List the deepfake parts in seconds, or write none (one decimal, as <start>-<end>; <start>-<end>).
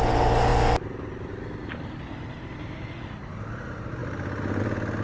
none